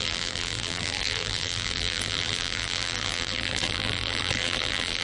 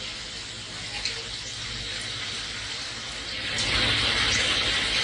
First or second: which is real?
second